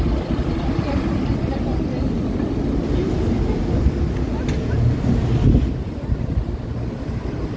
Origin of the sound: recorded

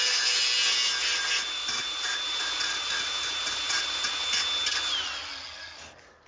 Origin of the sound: recorded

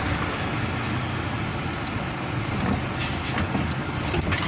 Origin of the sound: recorded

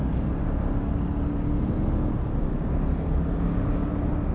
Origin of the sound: recorded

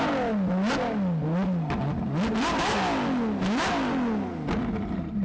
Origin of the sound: recorded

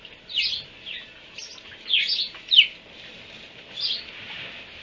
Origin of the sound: recorded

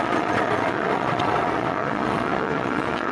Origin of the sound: remade